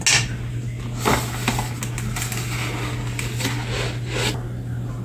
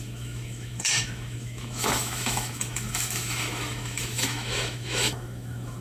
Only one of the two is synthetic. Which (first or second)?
second